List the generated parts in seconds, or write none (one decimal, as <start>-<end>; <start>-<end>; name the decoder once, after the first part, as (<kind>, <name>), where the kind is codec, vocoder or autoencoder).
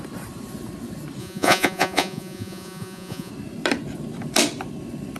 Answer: 1.2-3.3 (vocoder, Vocos)